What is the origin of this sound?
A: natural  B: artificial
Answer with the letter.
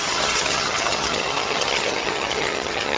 B